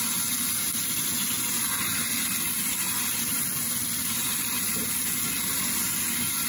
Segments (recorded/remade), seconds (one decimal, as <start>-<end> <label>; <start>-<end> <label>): 0.0-6.5 recorded